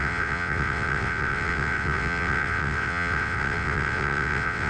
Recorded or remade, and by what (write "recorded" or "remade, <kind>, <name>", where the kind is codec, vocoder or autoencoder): remade, vocoder, WaveNeXt